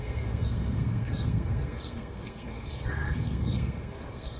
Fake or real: fake